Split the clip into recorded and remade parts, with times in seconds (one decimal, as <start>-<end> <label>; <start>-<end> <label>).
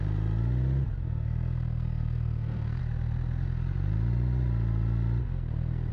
0.0-0.9 recorded; 0.9-2.8 remade; 2.8-5.2 recorded; 5.2-5.9 remade